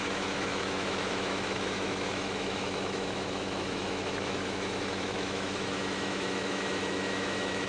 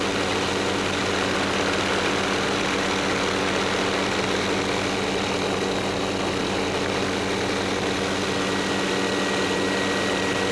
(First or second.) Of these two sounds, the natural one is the second